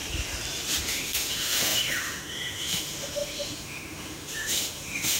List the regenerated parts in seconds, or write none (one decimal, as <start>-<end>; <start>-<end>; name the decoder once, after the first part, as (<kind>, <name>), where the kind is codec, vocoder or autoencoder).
0.8-5.2 (autoencoder, DAC-VAE)